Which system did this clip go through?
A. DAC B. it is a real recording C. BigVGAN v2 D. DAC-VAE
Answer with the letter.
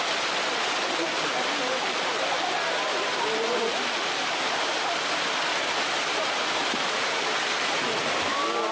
B